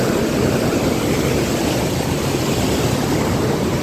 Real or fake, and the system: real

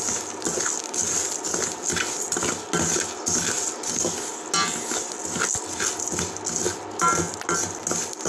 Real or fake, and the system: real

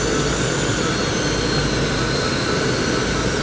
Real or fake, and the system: real